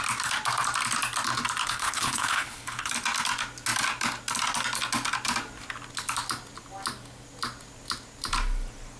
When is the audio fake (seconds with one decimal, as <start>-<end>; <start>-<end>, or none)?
1.6-2.9